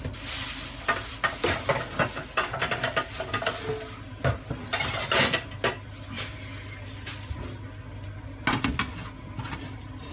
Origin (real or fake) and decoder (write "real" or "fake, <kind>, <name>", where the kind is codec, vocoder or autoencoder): real